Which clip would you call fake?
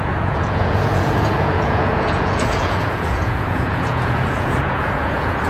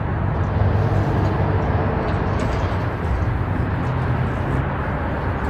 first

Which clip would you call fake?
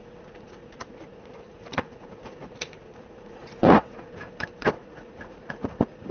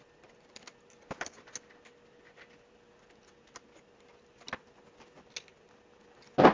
first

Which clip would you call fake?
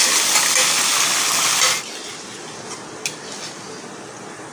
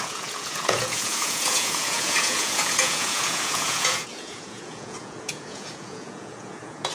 second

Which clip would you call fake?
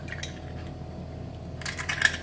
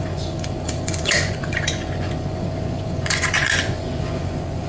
second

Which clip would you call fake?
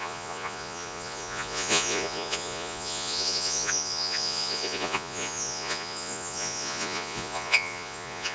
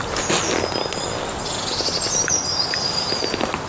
first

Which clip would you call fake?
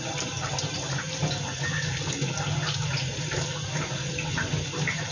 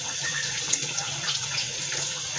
second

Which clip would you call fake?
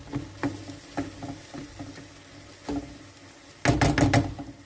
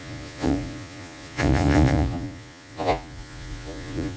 second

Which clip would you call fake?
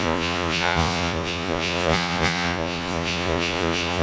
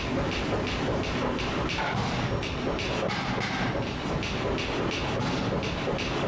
first